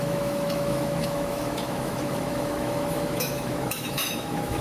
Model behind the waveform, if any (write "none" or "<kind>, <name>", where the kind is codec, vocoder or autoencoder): autoencoder, DAC-VAE